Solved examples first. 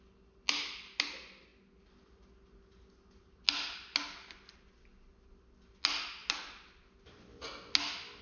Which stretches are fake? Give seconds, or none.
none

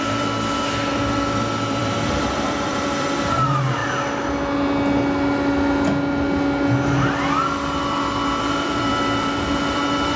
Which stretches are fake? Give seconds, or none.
0.0-3.8 (vocoder, BigVGAN v2); 8.4-10.2

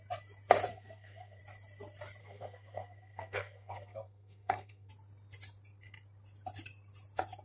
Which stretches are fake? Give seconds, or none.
0.7-1.4 (codec, SNAC); 2.2-4.9

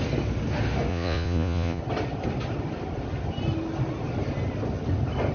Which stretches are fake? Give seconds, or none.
0.9-1.8 (vocoder, Vocos)

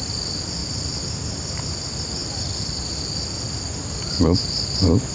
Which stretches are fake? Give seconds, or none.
0.6-1.8 (vocoder, BigVGAN v2); 2.2-4.5

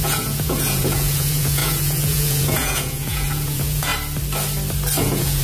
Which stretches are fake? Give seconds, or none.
0.0-3.9 (vocoder, Vocos); 5.0-5.4